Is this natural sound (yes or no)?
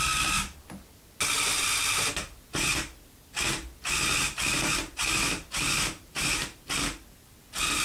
yes